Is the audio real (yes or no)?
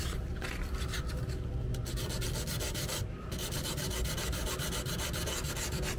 yes